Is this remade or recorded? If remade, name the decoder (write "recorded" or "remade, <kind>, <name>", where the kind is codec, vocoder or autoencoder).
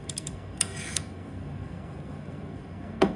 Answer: remade, codec, SNAC